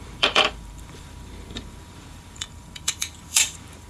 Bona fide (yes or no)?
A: no